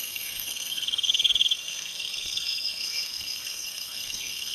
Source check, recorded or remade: remade